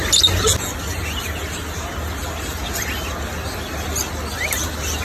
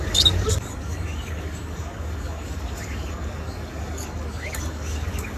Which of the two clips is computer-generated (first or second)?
second